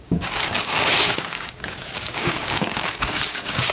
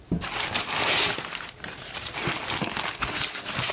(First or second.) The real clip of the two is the second